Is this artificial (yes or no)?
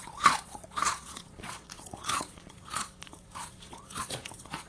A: yes